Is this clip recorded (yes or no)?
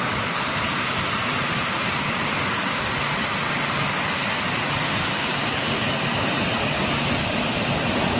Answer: yes